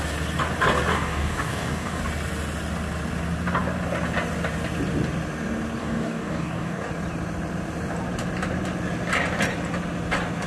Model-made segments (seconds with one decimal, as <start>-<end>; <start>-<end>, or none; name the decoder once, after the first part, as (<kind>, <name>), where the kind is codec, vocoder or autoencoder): 0.9-2.0 (codec, DAC); 5.8-6.9